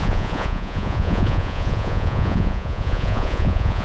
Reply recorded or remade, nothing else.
remade